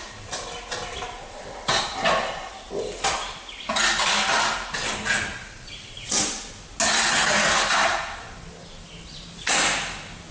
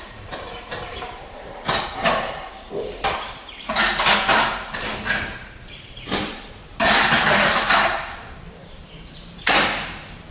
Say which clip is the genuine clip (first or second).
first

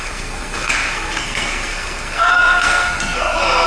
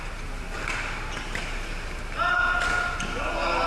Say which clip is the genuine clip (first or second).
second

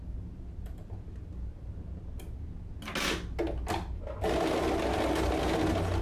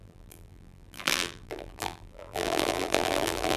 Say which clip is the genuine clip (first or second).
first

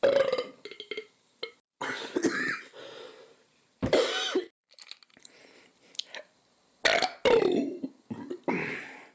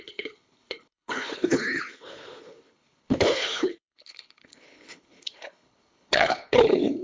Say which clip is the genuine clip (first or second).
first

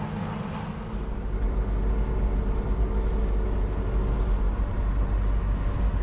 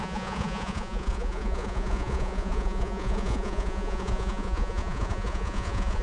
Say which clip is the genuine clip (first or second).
first